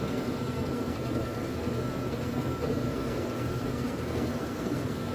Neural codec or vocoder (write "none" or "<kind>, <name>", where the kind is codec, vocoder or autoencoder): codec, SNAC